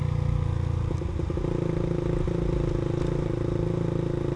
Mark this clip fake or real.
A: real